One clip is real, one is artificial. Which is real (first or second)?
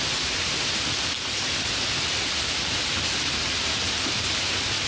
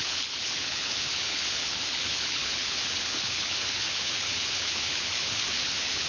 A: first